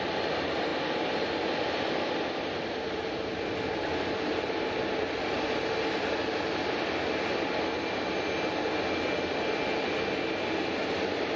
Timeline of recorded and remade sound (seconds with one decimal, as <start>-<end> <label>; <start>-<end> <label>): 0.0-11.4 recorded